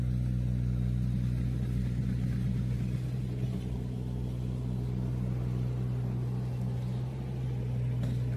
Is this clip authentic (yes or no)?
yes